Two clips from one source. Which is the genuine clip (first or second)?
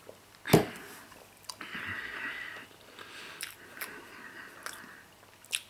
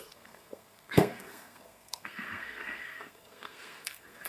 first